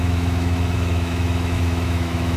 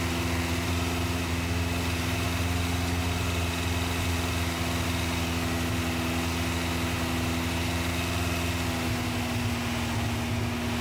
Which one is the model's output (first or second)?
first